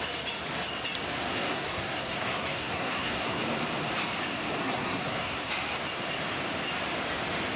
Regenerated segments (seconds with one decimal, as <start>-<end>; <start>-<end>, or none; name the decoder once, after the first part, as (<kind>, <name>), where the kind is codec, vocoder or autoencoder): 1.3-3.4 (codec, SNAC); 4.6-5.5